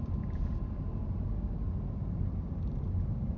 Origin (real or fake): real